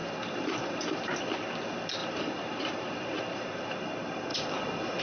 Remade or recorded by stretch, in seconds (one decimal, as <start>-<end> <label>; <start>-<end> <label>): 0.0-1.2 remade; 1.2-2.0 recorded; 2.0-3.9 remade; 3.9-4.3 recorded; 4.3-5.0 remade